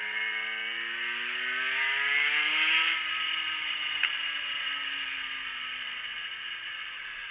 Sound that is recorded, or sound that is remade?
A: recorded